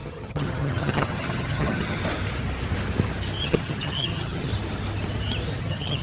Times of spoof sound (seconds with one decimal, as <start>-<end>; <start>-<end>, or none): 0.0-2.0; 3.4-4.5; 5.6-6.0